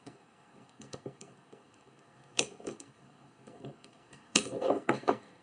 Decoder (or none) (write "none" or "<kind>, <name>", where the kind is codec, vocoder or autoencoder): codec, SNAC